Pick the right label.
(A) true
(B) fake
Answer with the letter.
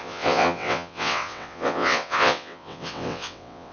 B